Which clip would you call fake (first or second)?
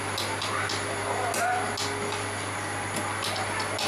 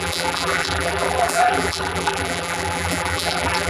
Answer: second